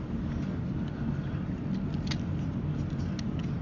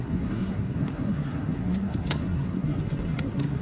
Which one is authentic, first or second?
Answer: first